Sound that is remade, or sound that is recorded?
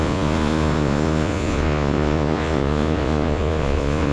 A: remade